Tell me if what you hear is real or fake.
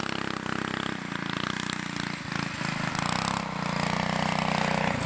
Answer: real